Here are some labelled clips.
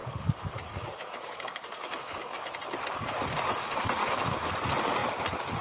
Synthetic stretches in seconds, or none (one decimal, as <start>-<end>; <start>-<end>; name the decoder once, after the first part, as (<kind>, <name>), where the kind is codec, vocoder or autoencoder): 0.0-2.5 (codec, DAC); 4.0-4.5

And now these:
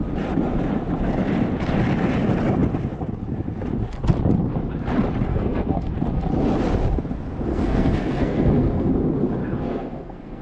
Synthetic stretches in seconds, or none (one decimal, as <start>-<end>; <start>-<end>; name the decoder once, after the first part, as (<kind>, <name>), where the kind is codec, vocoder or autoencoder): 5.3-5.9 (codec, SNAC); 7.5-8.9; 9.4-10.4

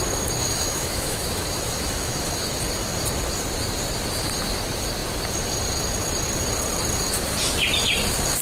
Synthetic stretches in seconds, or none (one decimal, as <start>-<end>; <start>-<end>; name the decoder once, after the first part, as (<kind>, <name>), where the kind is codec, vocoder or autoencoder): 0.4-2.6 (autoencoder, DAC-VAE)

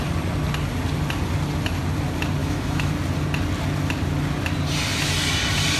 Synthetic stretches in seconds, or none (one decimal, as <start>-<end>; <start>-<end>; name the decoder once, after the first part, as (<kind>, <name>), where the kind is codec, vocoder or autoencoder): 2.4-2.9 (autoencoder, DAC-VAE)

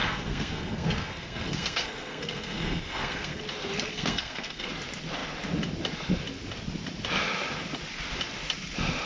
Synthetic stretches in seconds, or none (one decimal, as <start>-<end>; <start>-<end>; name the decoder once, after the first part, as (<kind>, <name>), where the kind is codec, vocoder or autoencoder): 0.0-3.4 (codec, SNAC); 3.9-4.7

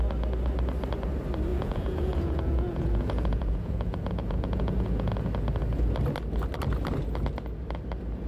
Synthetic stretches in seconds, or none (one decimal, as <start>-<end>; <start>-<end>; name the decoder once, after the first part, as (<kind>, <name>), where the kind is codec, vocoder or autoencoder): 1.5-5.1 (vocoder, Vocos)